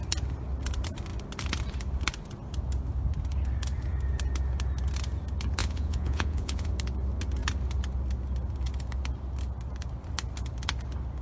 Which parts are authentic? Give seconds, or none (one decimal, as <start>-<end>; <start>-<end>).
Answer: 0.0-5.6; 6.7-11.2